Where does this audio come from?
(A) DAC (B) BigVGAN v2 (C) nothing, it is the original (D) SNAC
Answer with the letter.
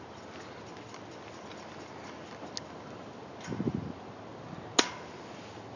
C